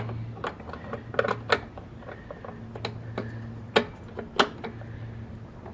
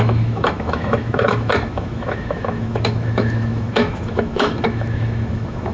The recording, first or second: first